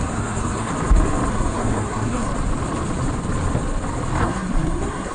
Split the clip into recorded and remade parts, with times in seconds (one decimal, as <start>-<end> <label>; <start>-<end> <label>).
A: 0.0-0.7 remade; 0.7-1.3 recorded; 1.3-2.3 remade; 2.3-4.2 recorded; 4.2-5.1 remade